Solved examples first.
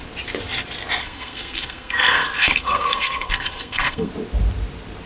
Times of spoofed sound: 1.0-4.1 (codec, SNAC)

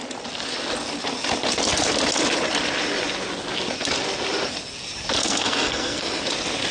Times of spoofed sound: 5.2-6.2 (codec, SNAC)

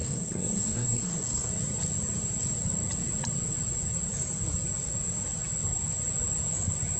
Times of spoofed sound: 0.0-1.5 (codec, SNAC)

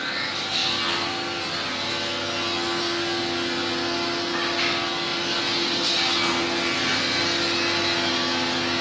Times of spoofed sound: none

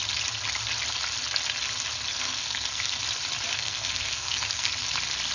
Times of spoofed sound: 2.1-3.0 (codec, SNAC); 3.5-4.7

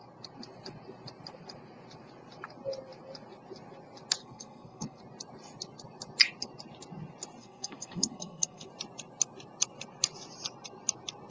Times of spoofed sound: 4.2-5.0 (codec, SNAC); 7.4-8.7